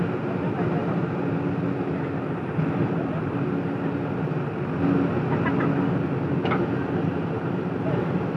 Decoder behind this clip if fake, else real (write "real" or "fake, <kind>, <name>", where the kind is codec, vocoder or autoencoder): real